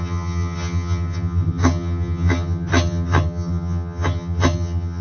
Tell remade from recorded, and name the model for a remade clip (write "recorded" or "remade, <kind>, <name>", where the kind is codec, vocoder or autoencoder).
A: remade, vocoder, HiFi-GAN